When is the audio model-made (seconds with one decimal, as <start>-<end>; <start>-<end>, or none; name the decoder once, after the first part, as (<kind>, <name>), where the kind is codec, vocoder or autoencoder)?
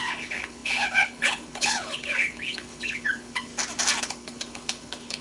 0.0-3.5 (codec, HILCodec); 4.0-5.2